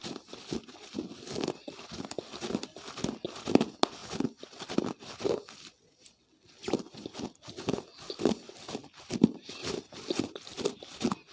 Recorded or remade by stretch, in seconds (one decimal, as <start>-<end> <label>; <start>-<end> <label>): 0.0-11.3 recorded